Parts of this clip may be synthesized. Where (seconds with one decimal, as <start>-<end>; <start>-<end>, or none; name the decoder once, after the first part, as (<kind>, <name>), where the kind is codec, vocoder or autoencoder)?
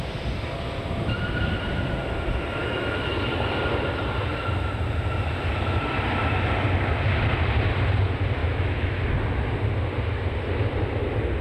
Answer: 2.6-3.1 (autoencoder, DAC-VAE); 8.4-9.0